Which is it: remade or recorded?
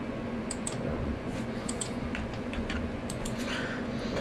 remade